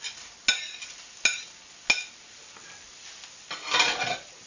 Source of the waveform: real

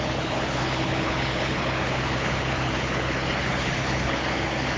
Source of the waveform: fake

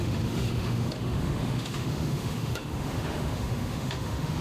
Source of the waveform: fake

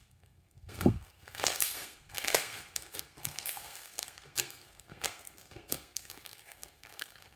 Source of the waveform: fake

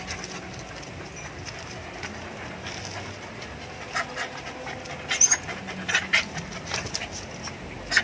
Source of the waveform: real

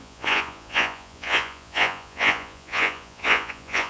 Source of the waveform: fake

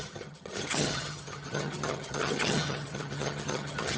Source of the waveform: fake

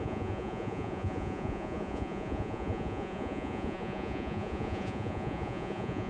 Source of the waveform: fake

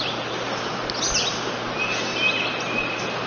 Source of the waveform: real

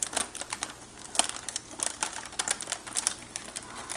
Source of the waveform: real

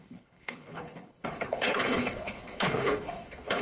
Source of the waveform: fake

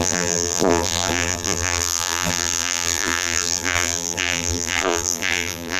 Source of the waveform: fake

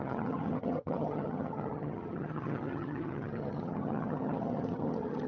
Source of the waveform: fake